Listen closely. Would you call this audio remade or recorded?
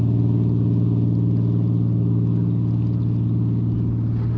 recorded